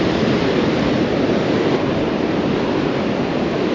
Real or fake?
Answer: real